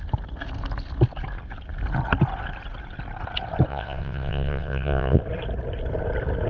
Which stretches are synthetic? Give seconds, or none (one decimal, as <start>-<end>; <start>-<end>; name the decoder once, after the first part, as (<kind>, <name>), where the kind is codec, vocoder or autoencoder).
3.7-5.2 (vocoder, WaveNeXt)